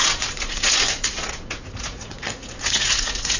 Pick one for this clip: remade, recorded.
remade